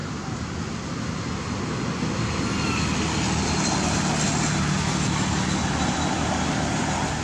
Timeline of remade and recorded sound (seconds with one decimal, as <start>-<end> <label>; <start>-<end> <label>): 0.0-7.2 recorded